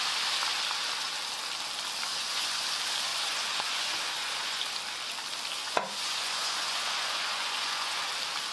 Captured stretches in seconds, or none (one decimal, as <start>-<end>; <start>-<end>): 0.0-2.1; 2.7-3.1; 4.6-5.6; 8.0-8.5